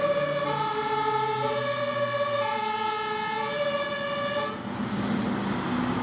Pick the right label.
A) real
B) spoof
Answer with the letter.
A